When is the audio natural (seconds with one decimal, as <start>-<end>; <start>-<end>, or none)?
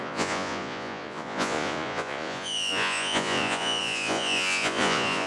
none